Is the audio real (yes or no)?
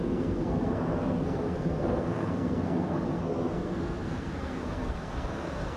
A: no